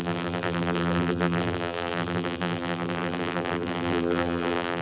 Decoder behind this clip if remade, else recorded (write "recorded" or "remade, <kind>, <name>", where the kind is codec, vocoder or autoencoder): remade, vocoder, BigVGAN v2